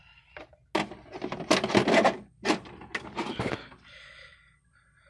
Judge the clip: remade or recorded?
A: recorded